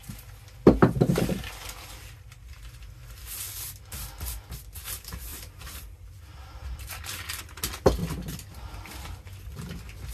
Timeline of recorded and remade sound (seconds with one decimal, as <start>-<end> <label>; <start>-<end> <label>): 0.0-5.3 recorded; 5.3-7.4 remade; 7.4-10.1 recorded